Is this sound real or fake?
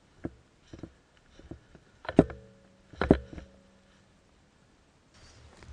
real